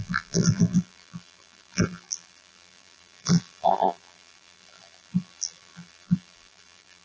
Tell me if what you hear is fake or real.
fake